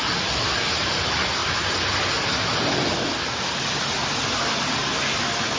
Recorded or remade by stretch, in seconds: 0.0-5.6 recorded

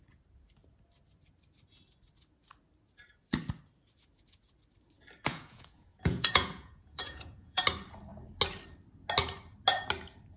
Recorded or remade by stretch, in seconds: 0.0-5.3 recorded; 5.3-7.6 remade; 7.6-10.4 recorded

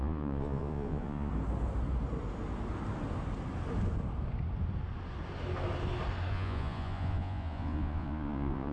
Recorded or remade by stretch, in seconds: 0.0-1.3 remade; 1.3-6.3 recorded; 6.3-8.7 remade

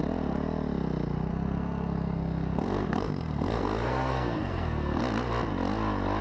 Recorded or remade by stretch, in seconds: 0.0-1.3 recorded; 1.3-5.0 remade; 5.0-6.2 recorded